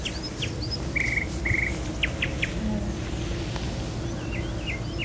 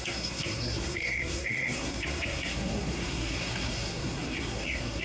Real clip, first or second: first